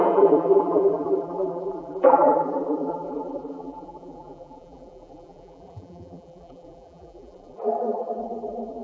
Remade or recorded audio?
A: remade